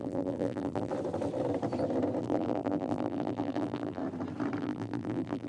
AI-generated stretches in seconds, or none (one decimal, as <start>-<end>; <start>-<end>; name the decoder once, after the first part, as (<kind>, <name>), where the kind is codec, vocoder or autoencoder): 0.0-0.9 (vocoder, BigVGAN v2); 2.2-4.0; 4.6-5.5

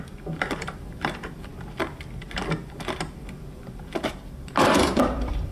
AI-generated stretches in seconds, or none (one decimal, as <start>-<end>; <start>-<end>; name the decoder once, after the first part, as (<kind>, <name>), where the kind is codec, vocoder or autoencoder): 0.0-1.5 (vocoder, BigVGAN v2); 4.8-5.5

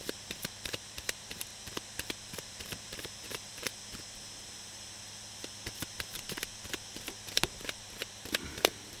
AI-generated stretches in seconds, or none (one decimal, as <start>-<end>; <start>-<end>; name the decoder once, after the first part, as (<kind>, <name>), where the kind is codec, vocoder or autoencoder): 0.0-1.5 (vocoder, BigVGAN v2); 2.3-3.7; 7.3-9.0

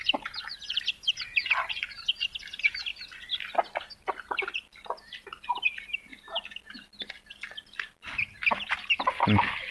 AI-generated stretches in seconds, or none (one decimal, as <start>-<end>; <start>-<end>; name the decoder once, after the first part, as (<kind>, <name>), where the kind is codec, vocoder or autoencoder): 0.0-2.9 (vocoder, BigVGAN v2); 5.5-6.1; 8.5-9.7

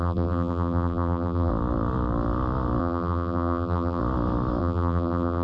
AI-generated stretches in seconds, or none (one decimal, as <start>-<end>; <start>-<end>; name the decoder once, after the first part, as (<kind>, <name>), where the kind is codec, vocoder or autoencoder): 0.0-1.5 (vocoder, BigVGAN v2); 2.8-4.0; 4.6-5.4